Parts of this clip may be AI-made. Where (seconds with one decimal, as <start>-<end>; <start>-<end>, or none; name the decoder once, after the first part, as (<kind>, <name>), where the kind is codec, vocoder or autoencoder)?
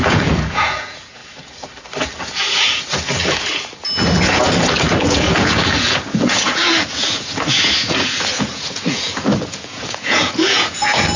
0.0-1.2 (vocoder, Vocos); 5.0-11.2